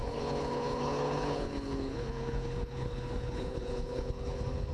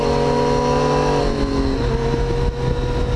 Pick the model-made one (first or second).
first